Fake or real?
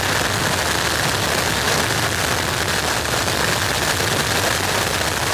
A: fake